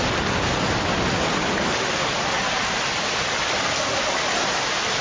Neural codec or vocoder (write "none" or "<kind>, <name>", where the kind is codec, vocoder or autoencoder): none